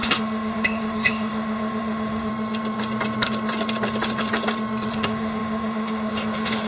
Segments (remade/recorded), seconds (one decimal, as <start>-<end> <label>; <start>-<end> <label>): 0.0-2.3 remade; 2.3-4.9 recorded; 4.9-6.7 remade